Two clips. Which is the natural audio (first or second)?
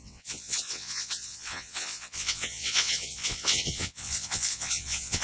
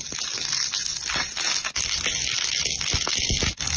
second